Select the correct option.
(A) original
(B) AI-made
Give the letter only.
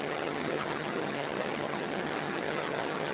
B